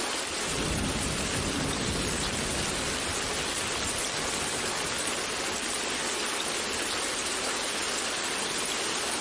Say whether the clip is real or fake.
real